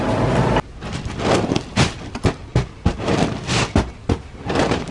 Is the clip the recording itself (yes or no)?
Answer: no